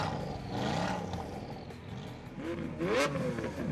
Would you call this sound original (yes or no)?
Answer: yes